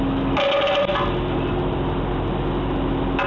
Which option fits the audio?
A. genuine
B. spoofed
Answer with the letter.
A